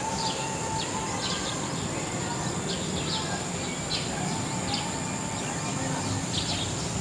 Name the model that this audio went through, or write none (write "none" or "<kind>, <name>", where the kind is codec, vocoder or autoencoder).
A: none